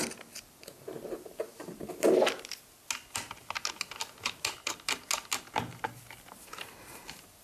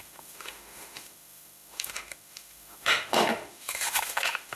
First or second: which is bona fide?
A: first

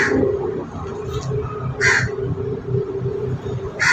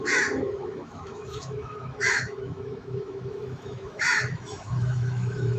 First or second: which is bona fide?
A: first